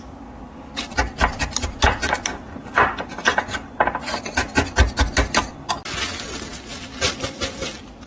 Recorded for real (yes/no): yes